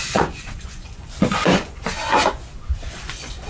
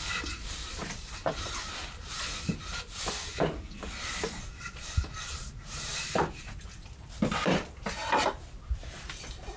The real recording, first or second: second